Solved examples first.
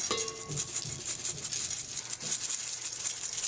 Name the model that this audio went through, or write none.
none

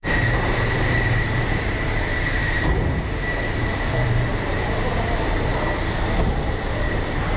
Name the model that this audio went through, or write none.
vocoder, BigVGAN v2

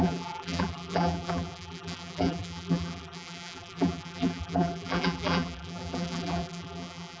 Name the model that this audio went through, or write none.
vocoder, BigVGAN v2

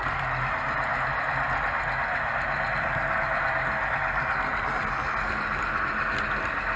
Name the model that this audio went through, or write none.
none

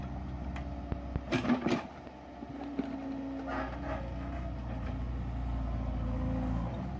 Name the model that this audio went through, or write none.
none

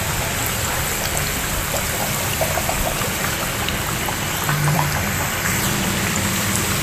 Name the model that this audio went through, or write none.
vocoder, BigVGAN v2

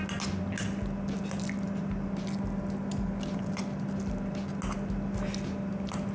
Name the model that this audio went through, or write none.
none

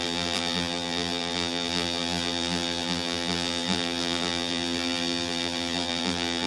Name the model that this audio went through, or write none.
vocoder, BigVGAN v2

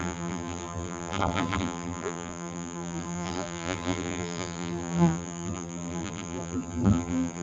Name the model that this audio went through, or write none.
vocoder, BigVGAN v2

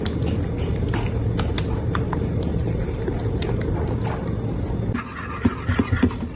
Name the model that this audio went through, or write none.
none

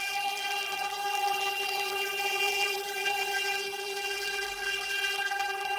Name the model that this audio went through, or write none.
vocoder, BigVGAN v2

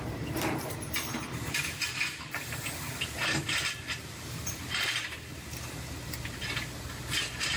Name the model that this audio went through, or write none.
vocoder, BigVGAN v2